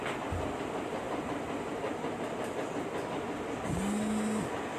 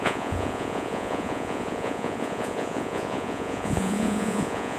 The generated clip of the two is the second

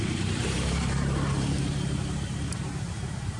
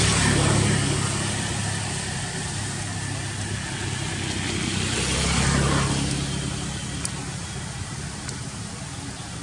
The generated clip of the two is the first